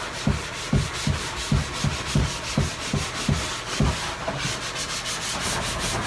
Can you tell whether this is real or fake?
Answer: real